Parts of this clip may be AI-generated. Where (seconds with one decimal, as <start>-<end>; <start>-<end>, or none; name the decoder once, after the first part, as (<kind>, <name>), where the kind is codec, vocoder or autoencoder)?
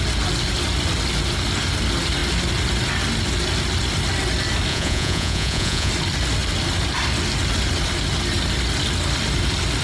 4.7-5.9 (vocoder, Vocos)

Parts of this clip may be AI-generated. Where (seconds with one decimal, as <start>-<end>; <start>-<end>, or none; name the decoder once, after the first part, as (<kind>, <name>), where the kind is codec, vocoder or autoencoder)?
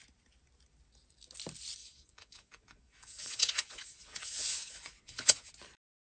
1.8-5.5 (vocoder, Vocos)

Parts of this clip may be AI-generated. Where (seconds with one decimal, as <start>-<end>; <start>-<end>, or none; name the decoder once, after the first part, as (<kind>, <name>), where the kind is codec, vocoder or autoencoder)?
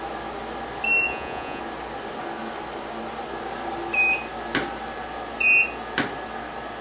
1.0-1.6 (vocoder, Vocos)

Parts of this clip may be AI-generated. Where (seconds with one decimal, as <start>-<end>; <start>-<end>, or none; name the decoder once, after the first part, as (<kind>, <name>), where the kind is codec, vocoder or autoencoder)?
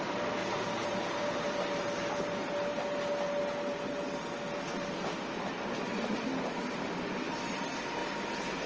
none